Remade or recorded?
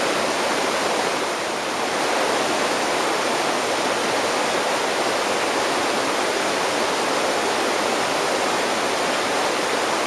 recorded